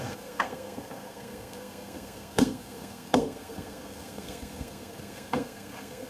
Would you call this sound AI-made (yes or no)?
yes